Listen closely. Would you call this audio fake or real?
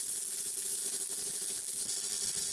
real